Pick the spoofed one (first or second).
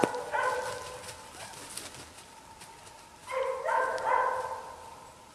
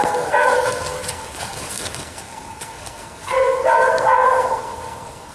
second